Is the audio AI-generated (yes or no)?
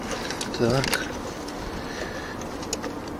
no